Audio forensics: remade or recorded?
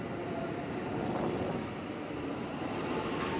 recorded